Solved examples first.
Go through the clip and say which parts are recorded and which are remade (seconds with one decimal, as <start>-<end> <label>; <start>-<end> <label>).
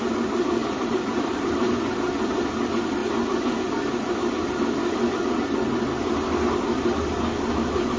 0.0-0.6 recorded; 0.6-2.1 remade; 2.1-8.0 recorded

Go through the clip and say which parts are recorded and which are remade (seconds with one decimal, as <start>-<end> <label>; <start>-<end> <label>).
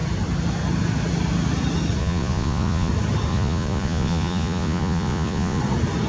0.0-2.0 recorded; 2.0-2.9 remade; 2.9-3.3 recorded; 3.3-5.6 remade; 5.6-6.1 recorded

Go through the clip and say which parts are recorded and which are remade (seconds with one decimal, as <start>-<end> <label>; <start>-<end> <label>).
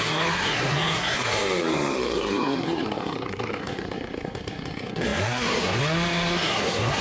0.0-7.0 remade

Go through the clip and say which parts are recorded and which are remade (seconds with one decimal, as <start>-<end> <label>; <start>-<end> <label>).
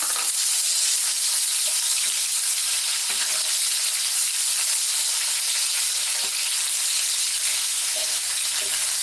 0.0-7.5 recorded; 7.5-8.2 remade; 8.2-9.0 recorded